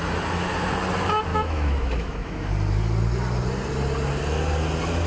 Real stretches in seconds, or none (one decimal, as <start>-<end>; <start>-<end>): 0.0-1.3; 2.5-5.1